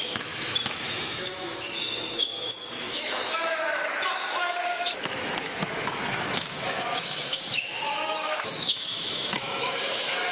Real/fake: fake